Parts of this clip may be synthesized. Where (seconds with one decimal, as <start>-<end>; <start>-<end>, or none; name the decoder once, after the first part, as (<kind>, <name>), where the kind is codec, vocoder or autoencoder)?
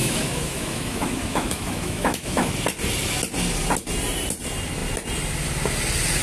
0.0-2.5 (autoencoder, DAC-VAE)